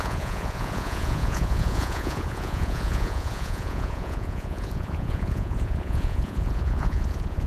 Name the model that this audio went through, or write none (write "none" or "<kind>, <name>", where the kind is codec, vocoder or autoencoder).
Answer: vocoder, Vocos